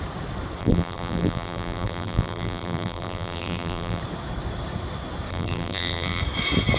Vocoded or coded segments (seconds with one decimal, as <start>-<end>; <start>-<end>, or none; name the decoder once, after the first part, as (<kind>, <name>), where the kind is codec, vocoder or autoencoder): 0.6-4.0 (vocoder, BigVGAN v2); 5.3-6.2